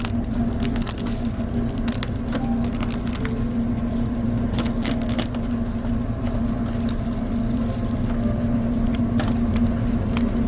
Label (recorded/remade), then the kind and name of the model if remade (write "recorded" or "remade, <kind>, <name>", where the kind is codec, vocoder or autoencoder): recorded